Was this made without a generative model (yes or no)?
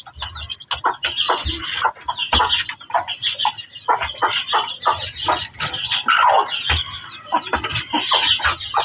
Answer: yes